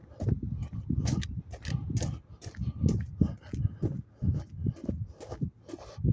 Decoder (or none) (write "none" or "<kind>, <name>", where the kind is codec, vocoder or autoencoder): none